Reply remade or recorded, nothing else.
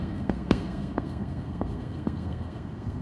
remade